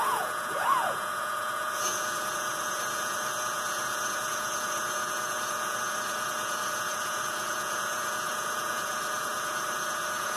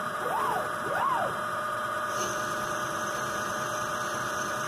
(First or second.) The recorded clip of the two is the second